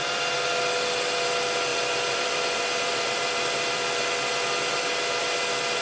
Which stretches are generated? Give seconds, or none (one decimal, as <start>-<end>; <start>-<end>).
1.7-4.0